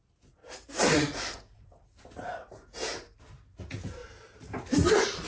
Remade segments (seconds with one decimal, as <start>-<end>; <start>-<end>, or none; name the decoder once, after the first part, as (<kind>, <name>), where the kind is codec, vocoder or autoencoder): 0.4-3.6 (vocoder, BigVGAN v2); 4.0-5.3